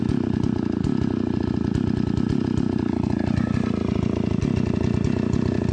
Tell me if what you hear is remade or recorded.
recorded